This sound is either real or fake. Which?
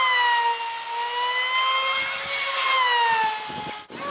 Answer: real